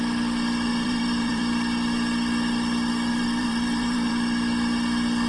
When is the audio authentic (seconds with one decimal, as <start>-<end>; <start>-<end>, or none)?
0.0-0.7; 1.4-3.1; 4.1-5.3